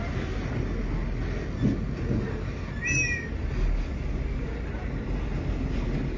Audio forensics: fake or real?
real